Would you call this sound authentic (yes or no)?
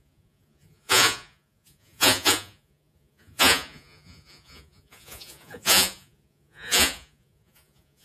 no